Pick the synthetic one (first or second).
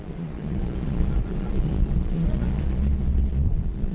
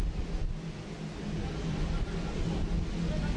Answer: first